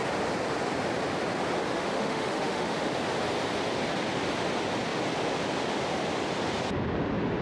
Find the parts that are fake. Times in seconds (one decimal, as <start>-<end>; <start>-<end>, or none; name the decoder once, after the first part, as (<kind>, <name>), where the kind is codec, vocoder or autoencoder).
1.7-2.9 (autoencoder, DAC-VAE)